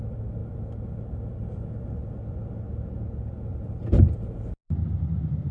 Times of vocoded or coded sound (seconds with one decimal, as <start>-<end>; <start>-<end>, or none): 3.5-5.5